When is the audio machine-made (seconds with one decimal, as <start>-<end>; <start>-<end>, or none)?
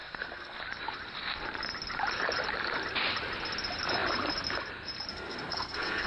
0.0-0.6; 5.1-6.1